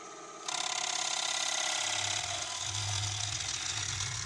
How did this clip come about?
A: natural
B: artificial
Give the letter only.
A